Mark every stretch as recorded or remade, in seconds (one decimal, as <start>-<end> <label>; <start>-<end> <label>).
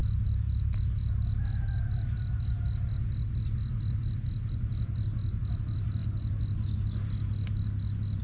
0.0-8.2 recorded